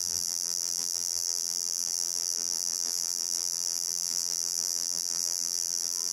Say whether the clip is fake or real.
fake